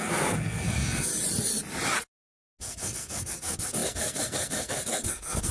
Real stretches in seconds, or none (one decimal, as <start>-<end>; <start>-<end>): 1.1-2.6